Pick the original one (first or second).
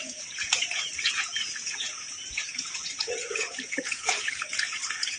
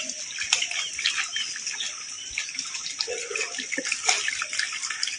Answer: second